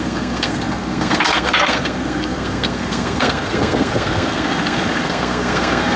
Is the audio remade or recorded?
remade